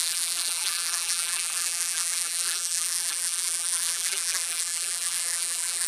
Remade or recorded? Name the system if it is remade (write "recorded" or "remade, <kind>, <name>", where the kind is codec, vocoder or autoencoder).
remade, vocoder, BigVGAN v2